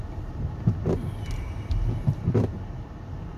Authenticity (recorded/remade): recorded